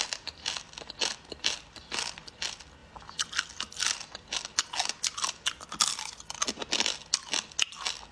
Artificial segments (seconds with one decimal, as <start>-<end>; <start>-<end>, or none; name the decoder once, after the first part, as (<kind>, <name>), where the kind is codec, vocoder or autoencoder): none

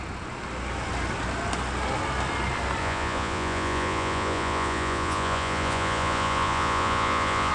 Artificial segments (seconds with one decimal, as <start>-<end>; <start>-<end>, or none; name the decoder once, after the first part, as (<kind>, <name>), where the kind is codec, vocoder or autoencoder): 2.8-7.5 (vocoder, Vocos)

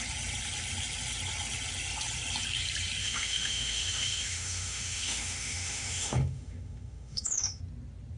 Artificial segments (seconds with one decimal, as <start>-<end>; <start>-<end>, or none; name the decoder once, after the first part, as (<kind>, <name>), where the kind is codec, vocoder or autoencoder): 3.0-7.6 (autoencoder, DAC-VAE)

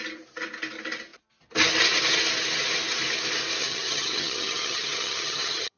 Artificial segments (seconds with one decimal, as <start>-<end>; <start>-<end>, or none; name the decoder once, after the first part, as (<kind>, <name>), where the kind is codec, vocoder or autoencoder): 3.6-5.8 (vocoder, HiFi-GAN)